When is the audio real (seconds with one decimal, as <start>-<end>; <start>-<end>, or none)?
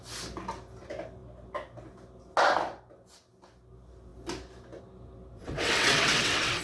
0.0-5.4